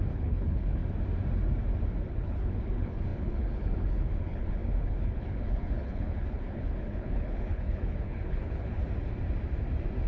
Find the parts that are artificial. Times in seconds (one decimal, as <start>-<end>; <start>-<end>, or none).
0.0-0.8; 2.0-8.9